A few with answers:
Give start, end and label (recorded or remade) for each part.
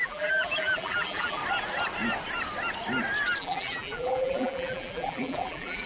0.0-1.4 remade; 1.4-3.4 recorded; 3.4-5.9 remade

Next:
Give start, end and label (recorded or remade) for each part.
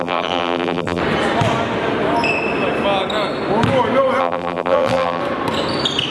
0.0-1.0 remade; 1.0-4.2 recorded; 4.2-5.2 remade; 5.2-6.1 recorded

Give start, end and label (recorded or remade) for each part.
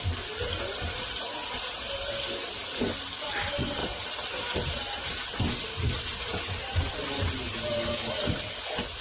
0.0-3.8 recorded; 3.8-5.2 remade; 5.2-6.3 recorded; 6.3-6.9 remade; 6.9-9.0 recorded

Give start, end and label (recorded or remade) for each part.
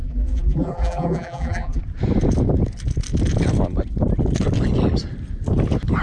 0.0-1.8 remade; 1.8-6.0 recorded